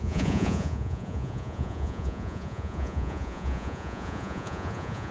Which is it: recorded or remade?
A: remade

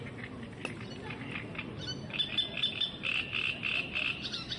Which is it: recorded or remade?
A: recorded